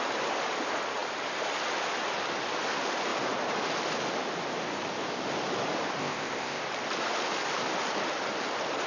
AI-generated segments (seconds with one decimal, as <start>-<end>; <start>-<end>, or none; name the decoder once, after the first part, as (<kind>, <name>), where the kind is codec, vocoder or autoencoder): 6.0-6.6 (codec, ZipCodec)